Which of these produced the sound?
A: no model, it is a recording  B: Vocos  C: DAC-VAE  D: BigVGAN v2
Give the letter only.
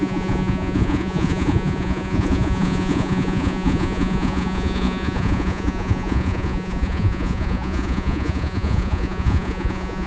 B